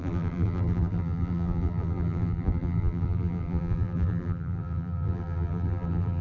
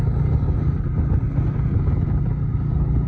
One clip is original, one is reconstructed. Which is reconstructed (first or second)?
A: first